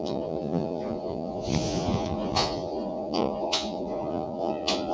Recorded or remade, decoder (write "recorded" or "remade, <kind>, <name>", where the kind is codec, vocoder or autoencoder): remade, vocoder, Vocos